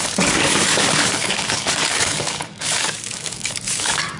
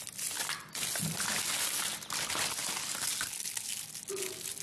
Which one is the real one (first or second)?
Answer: second